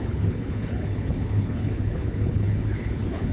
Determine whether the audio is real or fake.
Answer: fake